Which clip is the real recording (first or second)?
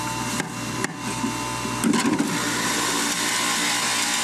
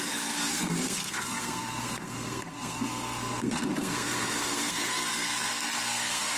first